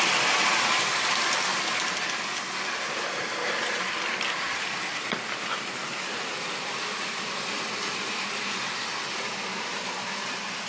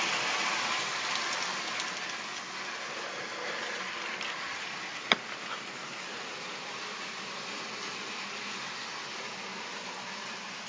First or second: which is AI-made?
first